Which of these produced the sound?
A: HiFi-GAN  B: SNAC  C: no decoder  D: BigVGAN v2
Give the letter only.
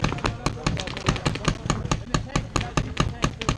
C